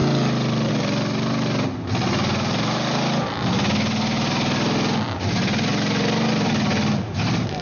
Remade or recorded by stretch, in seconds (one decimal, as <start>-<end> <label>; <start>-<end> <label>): 0.0-7.6 recorded